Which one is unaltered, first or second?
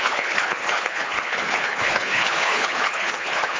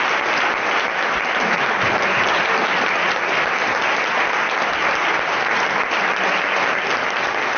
second